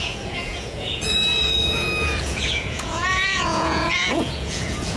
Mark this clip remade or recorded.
remade